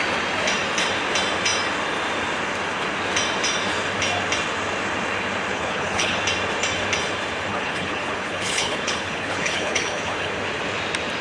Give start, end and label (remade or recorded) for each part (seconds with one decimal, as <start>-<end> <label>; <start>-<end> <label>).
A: 0.0-5.5 recorded; 5.5-6.2 remade; 6.2-7.5 recorded; 7.5-10.3 remade; 10.3-11.2 recorded